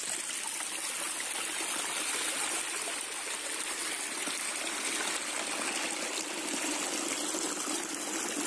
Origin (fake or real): real